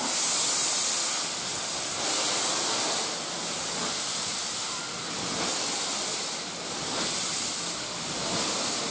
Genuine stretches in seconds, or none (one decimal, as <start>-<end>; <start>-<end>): 0.0-3.8; 4.3-6.1; 8.4-8.9